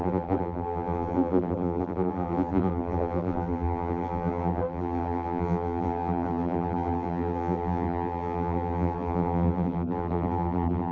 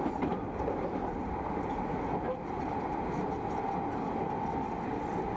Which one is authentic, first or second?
second